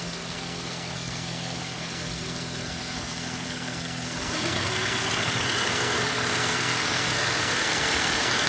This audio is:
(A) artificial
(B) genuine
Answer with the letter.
A